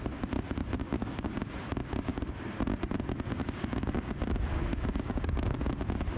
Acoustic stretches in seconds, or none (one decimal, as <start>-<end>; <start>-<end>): 0.0-0.8; 1.4-1.8; 2.3-3.3; 4.1-4.7; 5.6-6.2